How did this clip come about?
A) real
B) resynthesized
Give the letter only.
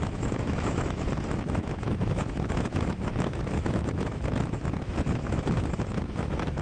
B